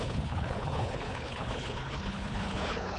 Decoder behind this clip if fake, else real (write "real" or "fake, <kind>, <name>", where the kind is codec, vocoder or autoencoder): fake, codec, HILCodec